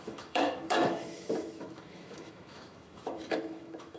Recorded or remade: remade